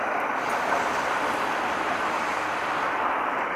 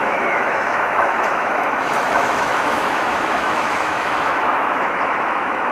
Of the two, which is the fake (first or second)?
second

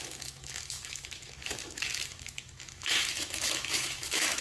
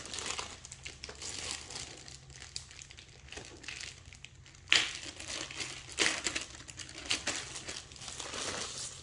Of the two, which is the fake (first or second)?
first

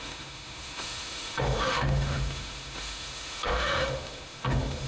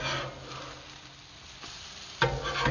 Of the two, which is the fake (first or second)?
first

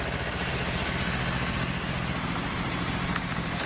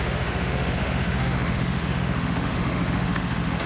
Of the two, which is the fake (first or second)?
second